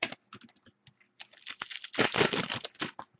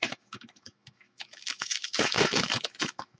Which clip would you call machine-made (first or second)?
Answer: second